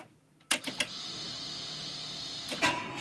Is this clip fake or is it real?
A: real